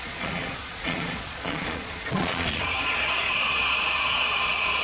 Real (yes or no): no